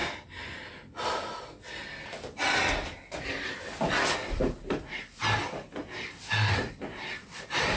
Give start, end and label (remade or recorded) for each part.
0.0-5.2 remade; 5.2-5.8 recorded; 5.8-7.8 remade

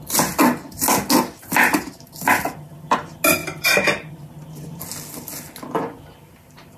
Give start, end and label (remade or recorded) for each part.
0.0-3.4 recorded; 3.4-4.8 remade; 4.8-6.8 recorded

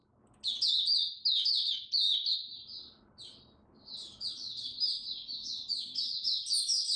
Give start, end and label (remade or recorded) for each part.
0.0-7.0 recorded

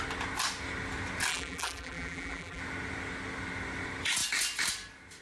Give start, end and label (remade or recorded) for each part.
0.0-1.3 recorded; 1.3-2.6 remade; 2.6-5.2 recorded

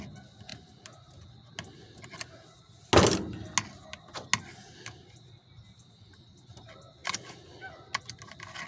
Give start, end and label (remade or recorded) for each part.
0.0-7.0 recorded; 7.0-7.6 remade; 7.6-8.7 recorded

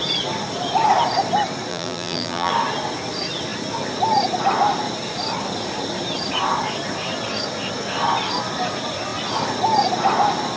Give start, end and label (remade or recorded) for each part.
0.0-1.7 recorded; 1.7-2.5 remade; 2.5-10.6 recorded

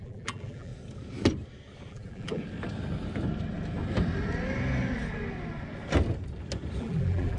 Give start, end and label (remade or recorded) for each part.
0.0-0.7 remade; 0.7-1.9 recorded; 1.9-2.4 remade; 2.4-6.8 recorded; 6.8-7.4 remade

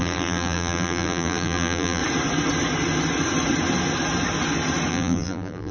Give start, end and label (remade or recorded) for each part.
0.0-2.0 remade; 2.0-4.9 recorded; 4.9-5.7 remade